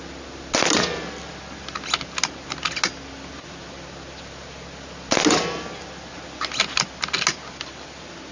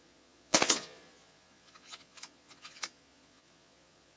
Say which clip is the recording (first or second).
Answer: first